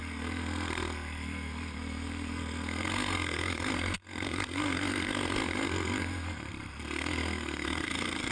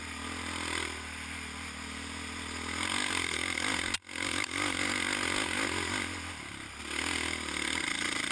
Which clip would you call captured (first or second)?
second